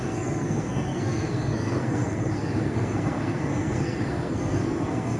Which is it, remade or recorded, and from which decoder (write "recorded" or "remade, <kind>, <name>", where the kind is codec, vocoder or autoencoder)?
remade, codec, SNAC